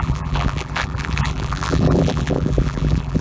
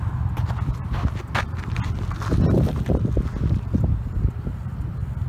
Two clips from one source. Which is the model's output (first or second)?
first